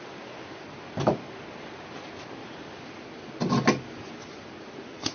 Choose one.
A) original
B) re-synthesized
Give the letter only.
A